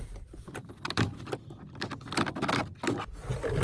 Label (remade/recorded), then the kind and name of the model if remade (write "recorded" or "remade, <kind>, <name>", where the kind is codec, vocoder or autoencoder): recorded